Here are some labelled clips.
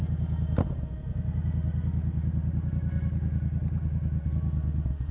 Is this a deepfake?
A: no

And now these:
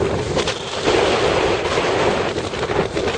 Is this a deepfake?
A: no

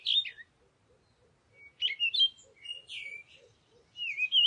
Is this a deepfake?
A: no